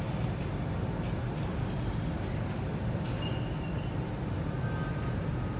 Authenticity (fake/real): real